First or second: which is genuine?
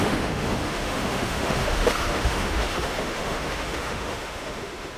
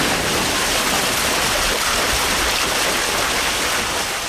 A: second